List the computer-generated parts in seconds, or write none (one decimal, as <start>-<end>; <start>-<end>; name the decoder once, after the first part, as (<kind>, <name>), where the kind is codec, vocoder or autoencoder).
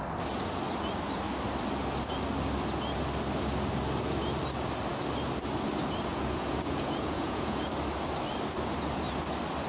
6.1-7.7 (vocoder, Vocos)